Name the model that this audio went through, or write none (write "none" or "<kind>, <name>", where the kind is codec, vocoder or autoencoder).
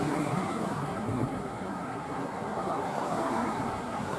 codec, SNAC